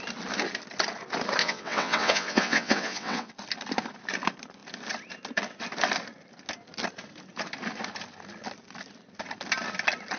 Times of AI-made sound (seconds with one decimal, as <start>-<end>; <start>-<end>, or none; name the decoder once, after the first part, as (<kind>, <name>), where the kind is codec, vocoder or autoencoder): 1.4-3.3 (vocoder, WaveNeXt)